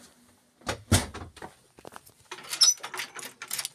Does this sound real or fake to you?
real